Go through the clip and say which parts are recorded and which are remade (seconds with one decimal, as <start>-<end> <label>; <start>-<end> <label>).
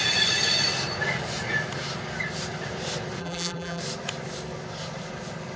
0.0-3.2 recorded; 3.2-3.8 remade; 3.8-5.6 recorded